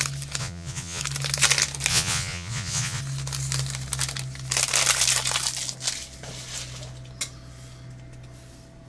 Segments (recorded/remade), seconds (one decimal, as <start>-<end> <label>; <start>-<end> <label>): 0.0-0.4 recorded; 0.4-1.0 remade; 1.0-1.9 recorded; 1.9-3.0 remade; 3.0-8.9 recorded